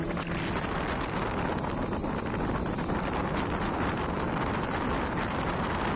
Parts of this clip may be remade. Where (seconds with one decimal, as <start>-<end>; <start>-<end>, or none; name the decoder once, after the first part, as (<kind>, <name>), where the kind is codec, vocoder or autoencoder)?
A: 2.0-5.6 (vocoder, BigVGAN v2)